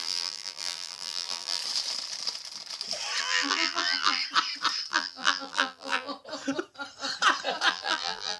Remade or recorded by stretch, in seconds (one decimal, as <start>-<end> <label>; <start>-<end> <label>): 0.0-1.6 remade; 1.6-3.2 recorded; 3.2-4.2 remade; 4.2-4.9 recorded; 4.9-6.1 remade; 6.1-7.7 recorded; 7.7-8.4 remade